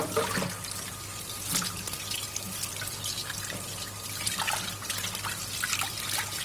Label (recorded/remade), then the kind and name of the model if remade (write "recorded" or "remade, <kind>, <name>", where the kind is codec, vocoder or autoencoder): recorded